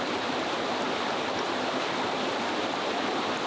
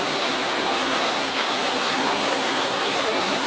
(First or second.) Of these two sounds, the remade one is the second